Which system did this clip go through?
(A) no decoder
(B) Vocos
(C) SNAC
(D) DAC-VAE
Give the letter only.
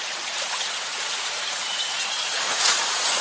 B